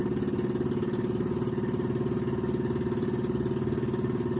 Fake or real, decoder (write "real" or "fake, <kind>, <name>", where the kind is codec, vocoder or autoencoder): real